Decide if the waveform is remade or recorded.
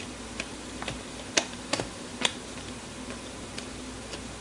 remade